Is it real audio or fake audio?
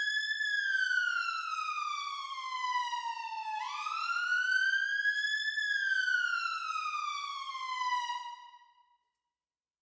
real